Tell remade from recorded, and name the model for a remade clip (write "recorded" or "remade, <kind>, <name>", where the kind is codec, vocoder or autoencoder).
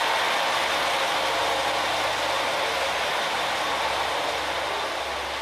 recorded